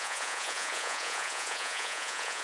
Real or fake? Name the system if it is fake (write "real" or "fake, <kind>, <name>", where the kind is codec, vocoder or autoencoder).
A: fake, vocoder, Vocos